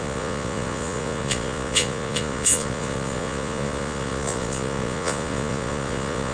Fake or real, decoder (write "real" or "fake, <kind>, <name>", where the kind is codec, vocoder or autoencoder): fake, vocoder, Vocos